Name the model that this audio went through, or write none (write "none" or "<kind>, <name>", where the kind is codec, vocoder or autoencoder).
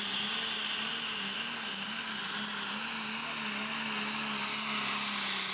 none